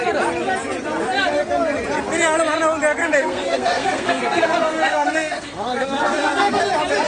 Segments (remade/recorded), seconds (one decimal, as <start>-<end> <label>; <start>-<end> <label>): 0.0-3.0 recorded; 3.0-6.6 remade; 6.6-7.1 recorded